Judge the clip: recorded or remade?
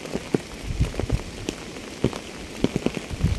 recorded